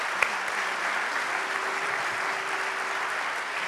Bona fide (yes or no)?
yes